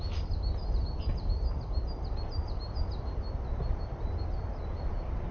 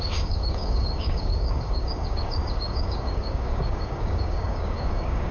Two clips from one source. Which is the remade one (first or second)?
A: second